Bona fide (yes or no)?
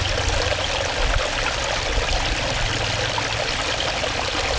yes